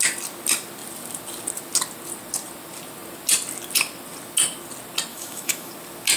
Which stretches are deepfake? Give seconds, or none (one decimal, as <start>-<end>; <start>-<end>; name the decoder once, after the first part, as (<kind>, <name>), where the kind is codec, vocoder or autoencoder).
5.1-5.7 (autoencoder, DAC-VAE)